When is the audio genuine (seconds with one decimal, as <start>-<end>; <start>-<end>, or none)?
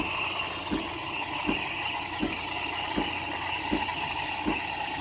0.0-5.0